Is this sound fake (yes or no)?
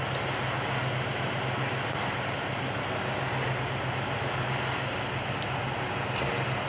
no